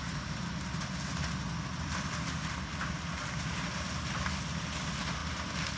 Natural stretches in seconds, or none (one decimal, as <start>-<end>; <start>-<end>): 0.0-5.8